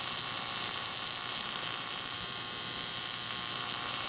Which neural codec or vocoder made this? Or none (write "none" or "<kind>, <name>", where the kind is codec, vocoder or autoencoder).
vocoder, BigVGAN v2